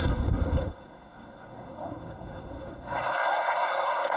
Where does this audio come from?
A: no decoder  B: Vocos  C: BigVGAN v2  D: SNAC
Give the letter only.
D